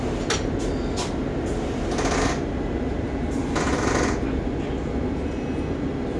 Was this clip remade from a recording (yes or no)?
no